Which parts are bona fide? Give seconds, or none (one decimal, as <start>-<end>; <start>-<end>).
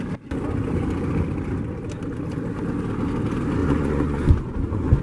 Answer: 0.0-3.6